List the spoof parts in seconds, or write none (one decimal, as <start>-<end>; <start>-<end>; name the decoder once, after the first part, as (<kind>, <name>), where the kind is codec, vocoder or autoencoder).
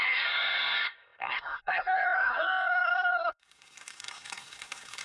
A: 0.0-5.0 (codec, SNAC)